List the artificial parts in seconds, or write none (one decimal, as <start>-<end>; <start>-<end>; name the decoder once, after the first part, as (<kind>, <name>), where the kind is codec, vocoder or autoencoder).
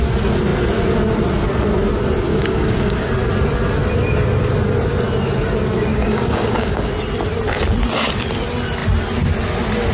2.3-3.1 (codec, DAC); 5.9-6.9